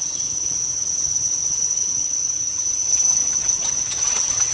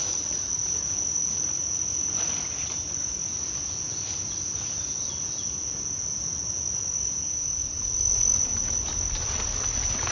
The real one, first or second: second